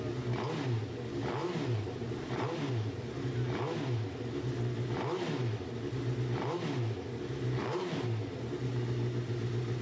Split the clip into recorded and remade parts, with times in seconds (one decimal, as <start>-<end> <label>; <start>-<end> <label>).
0.0-1.4 recorded; 1.4-3.0 remade; 3.0-7.6 recorded; 7.6-9.3 remade; 9.3-9.8 recorded